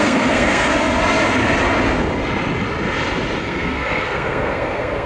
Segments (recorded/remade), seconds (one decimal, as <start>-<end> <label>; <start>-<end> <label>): 0.0-0.7 remade; 0.7-3.4 recorded; 3.4-5.1 remade